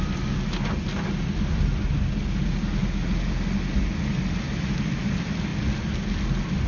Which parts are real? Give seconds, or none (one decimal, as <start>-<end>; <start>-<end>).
0.0-6.7